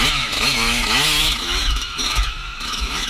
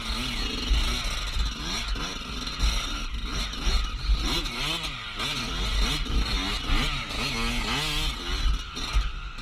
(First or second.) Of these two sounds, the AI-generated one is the first